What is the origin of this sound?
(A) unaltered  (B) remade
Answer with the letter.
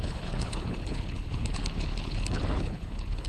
B